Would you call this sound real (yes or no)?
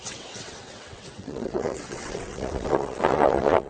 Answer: no